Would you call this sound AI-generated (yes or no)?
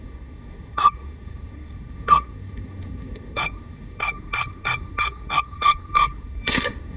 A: yes